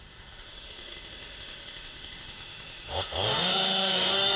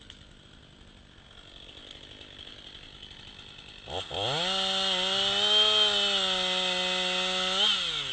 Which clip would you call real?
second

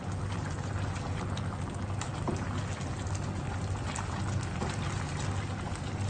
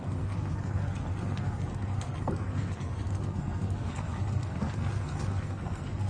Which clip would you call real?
first